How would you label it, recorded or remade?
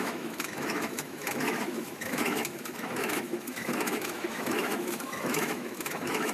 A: remade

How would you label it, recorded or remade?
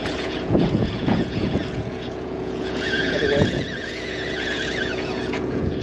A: remade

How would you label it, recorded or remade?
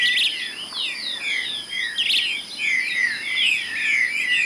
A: recorded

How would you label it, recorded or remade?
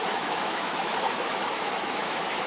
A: remade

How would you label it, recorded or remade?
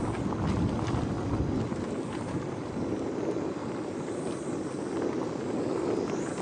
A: recorded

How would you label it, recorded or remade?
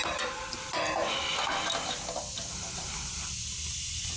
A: recorded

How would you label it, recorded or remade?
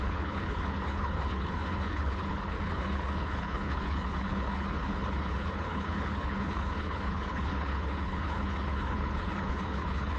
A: remade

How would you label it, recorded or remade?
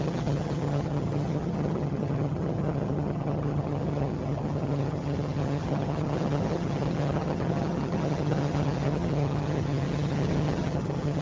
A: remade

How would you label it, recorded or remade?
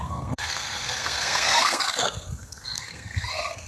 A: remade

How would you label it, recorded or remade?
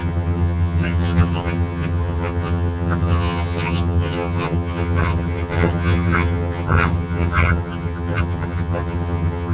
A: remade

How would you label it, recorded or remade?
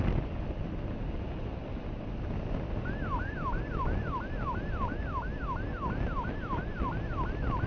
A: recorded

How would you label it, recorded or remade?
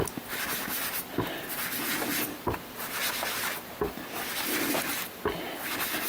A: recorded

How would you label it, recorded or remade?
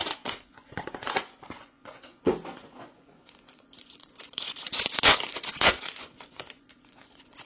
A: remade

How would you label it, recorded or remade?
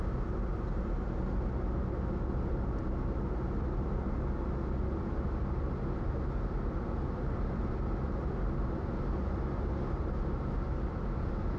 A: recorded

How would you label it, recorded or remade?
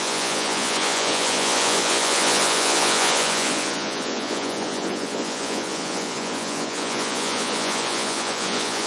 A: remade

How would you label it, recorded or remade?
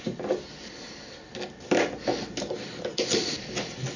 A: recorded